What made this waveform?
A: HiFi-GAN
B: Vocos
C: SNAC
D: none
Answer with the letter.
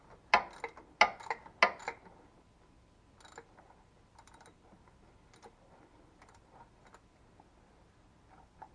D